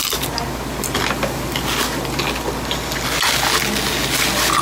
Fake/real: real